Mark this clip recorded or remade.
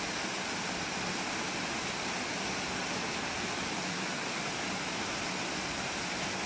recorded